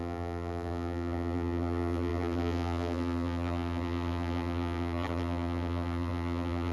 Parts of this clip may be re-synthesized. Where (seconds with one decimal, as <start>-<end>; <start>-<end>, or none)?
0.0-6.7